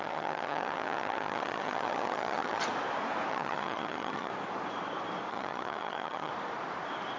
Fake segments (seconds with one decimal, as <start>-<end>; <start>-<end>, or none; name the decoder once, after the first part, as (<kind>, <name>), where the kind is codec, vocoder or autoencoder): 0.0-2.6 (vocoder, HiFi-GAN); 3.3-4.3; 5.3-6.3